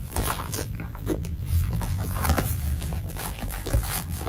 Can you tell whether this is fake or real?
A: fake